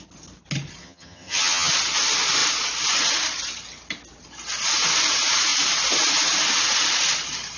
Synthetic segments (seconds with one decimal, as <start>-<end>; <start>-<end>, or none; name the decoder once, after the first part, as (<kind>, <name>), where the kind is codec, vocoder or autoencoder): 0.8-1.7 (vocoder, HiFi-GAN)